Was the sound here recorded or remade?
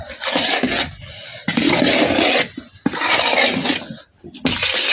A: recorded